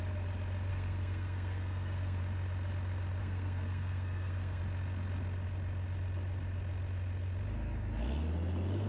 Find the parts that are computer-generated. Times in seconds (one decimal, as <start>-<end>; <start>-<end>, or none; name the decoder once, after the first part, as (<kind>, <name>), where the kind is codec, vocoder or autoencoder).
0.7-2.2 (codec, SNAC); 3.2-4.6